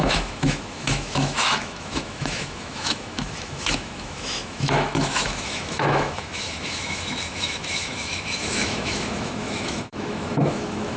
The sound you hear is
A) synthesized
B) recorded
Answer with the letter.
A